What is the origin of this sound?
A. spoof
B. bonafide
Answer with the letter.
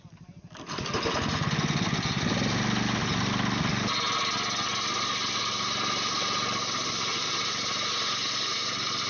B